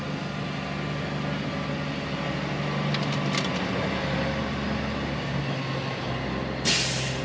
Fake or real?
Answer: real